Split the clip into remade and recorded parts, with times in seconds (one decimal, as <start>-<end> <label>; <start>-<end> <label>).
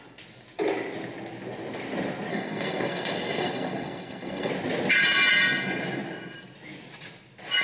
0.0-2.3 recorded; 2.3-4.5 remade; 4.5-7.6 recorded